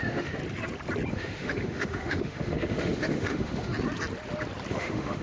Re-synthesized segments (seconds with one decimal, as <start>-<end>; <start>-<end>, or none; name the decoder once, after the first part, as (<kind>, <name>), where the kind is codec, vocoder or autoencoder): 0.0-0.4 (autoencoder, DAC-VAE); 1.1-3.7; 4.7-5.2